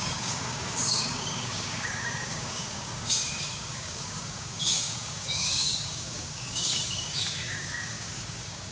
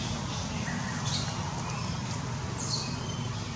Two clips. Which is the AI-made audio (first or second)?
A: first